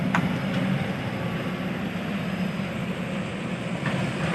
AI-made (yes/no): no